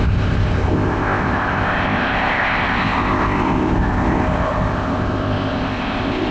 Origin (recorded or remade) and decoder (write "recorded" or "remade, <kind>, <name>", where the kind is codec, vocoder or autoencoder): remade, codec, ZipCodec